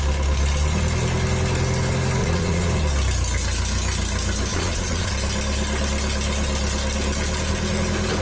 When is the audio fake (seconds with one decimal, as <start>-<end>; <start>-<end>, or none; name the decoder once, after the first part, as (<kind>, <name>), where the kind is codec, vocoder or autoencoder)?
2.2-2.7 (vocoder, Vocos); 4.5-5.1